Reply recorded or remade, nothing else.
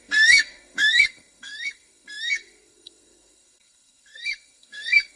remade